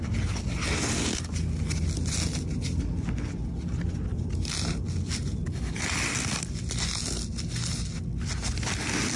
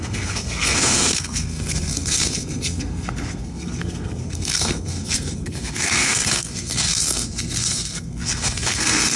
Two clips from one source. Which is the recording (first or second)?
first